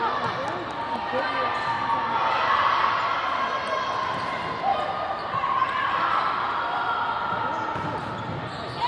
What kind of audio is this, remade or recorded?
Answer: recorded